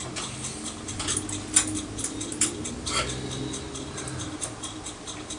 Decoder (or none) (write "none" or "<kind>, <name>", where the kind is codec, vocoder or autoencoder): none